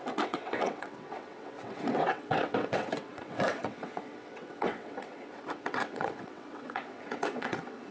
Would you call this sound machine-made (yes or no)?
yes